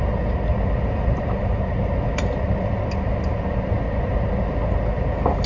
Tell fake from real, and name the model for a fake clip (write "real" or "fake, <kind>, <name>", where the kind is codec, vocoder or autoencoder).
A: real